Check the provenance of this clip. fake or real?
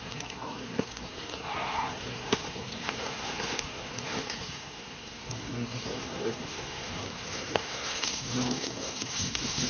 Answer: fake